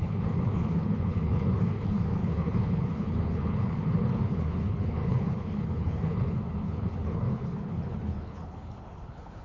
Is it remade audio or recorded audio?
remade